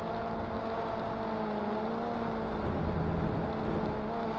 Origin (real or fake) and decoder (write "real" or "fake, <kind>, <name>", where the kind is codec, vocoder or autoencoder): real